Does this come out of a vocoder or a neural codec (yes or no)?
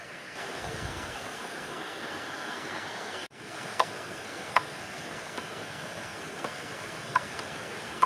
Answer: yes